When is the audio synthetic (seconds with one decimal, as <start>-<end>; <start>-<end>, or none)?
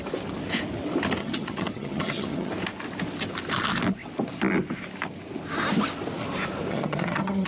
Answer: 1.2-2.5; 6.7-7.5